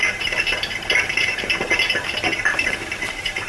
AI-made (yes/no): yes